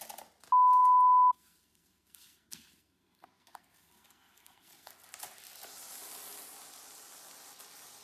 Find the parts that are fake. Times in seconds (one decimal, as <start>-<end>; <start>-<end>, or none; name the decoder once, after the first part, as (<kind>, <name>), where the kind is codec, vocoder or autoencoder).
0.8-4.9 (codec, SNAC)